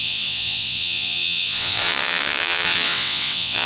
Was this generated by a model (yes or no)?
yes